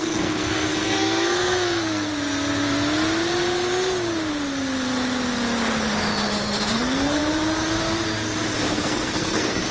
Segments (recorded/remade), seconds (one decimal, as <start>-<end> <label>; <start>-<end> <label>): 0.0-2.1 remade; 2.1-6.7 recorded; 6.7-7.2 remade; 7.2-8.7 recorded; 8.7-9.7 remade